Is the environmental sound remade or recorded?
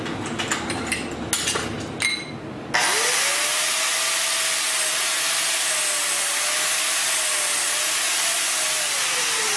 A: recorded